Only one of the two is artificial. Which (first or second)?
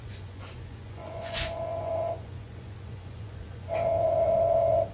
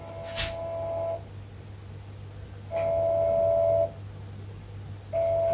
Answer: first